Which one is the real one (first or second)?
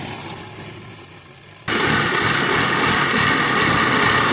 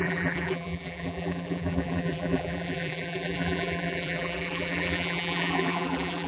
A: first